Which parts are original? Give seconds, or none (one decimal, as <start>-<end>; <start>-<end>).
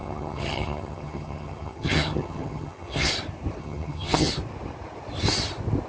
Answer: 3.1-3.6; 4.3-5.9